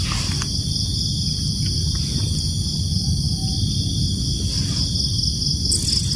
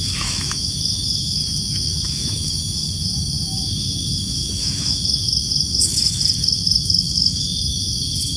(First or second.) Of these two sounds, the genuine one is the first